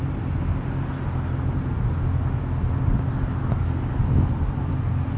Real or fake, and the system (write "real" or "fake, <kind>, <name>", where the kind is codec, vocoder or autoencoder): real